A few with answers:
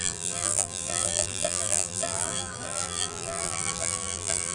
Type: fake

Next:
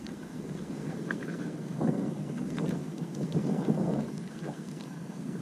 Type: fake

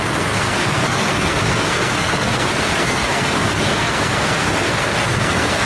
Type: fake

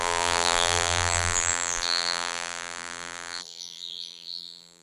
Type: fake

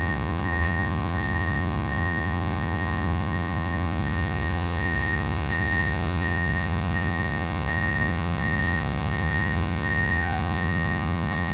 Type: fake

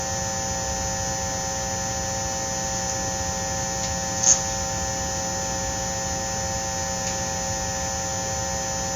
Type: real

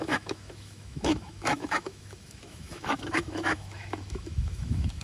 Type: fake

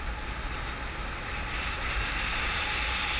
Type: real